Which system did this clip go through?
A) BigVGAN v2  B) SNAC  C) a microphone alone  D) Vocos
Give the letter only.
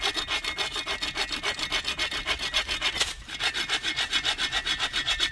C